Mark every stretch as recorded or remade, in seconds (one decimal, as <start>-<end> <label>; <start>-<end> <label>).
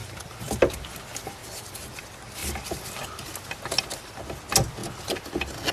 0.0-5.7 recorded